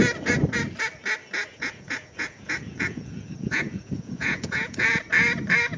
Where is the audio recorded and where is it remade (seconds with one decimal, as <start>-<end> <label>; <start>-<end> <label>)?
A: 0.0-1.5 recorded; 1.5-5.0 remade; 5.0-5.8 recorded